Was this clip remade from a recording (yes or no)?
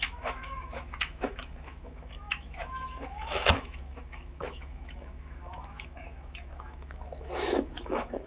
yes